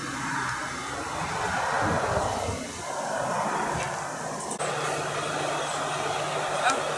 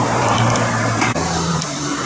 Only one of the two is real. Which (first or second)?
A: first